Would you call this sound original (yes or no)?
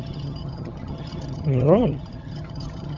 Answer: no